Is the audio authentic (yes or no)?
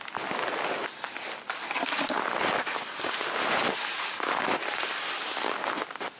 yes